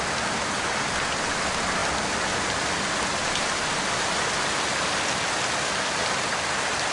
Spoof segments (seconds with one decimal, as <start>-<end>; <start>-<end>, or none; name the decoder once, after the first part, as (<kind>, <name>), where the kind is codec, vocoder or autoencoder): none